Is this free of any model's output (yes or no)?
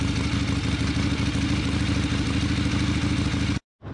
yes